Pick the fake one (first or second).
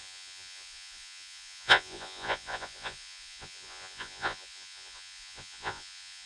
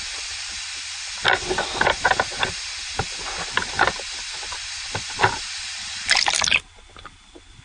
first